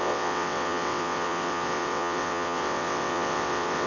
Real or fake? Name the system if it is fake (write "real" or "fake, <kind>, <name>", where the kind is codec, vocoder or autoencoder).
fake, vocoder, WaveNeXt